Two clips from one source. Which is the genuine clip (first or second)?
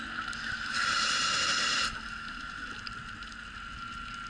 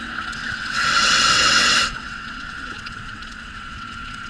first